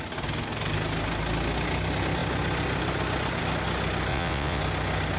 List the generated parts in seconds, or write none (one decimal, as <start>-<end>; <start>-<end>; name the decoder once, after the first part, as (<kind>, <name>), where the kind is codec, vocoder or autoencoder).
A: 4.1-4.6 (vocoder, WaveNeXt)